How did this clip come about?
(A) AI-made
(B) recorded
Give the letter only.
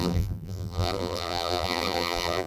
A